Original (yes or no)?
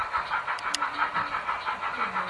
yes